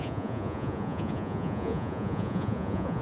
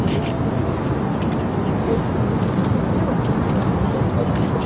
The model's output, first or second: first